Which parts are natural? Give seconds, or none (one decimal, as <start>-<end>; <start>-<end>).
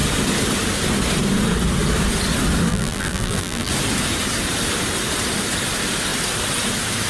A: 0.0-2.7; 3.7-7.1